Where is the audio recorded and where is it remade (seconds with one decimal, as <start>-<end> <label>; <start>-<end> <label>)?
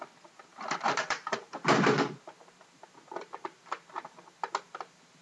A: 0.0-0.5 recorded; 0.5-1.5 remade; 1.5-5.2 recorded